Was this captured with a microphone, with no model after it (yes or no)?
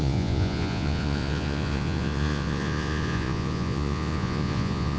no